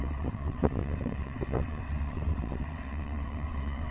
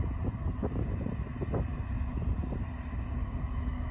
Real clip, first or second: second